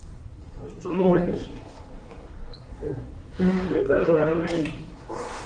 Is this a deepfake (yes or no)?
yes